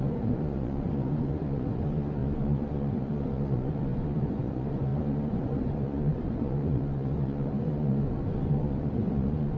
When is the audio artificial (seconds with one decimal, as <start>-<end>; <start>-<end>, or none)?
0.0-9.6